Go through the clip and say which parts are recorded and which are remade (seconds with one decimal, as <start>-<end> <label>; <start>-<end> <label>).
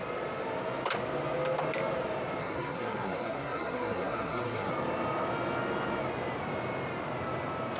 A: 0.0-2.4 recorded; 2.4-4.7 remade; 4.7-7.8 recorded